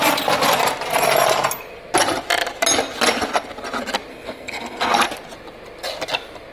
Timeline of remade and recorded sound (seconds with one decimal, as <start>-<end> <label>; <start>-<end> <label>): 0.0-4.1 recorded; 4.1-4.9 remade; 4.9-6.5 recorded